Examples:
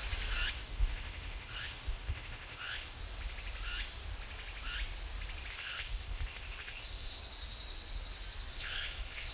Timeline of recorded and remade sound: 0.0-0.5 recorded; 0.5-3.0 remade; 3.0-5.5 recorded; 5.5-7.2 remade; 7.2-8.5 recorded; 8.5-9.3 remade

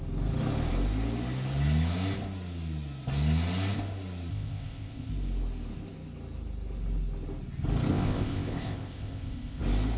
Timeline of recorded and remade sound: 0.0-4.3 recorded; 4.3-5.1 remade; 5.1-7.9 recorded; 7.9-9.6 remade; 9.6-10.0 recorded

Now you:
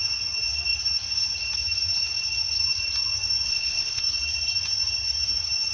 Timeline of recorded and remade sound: 0.0-3.5 recorded; 3.5-4.0 remade; 4.0-5.7 recorded

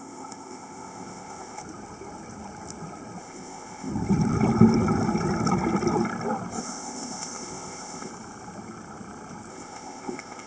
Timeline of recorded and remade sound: 0.0-1.6 remade; 1.6-3.2 recorded; 3.2-3.9 remade; 3.9-6.6 recorded; 6.6-8.1 remade; 8.1-9.5 recorded; 9.5-10.5 remade

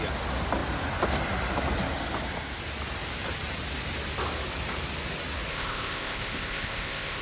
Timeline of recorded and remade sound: 0.0-5.5 recorded; 5.5-7.2 remade